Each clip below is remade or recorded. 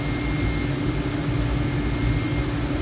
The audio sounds recorded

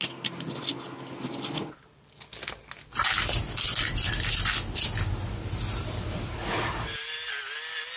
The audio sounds recorded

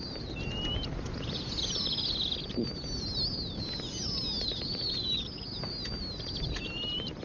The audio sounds recorded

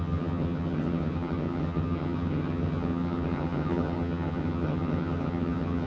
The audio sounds remade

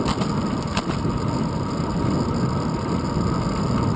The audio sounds recorded